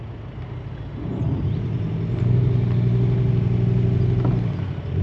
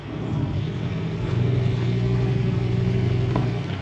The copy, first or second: second